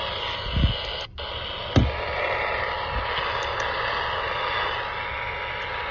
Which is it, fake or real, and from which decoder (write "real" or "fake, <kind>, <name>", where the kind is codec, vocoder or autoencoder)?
real